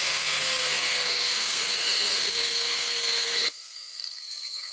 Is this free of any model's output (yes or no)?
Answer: no